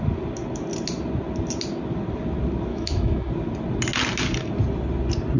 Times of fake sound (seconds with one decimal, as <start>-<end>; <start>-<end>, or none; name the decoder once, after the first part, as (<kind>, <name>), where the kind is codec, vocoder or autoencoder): 2.7-3.3 (autoencoder, DAC-VAE)